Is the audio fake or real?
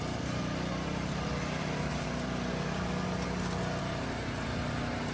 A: real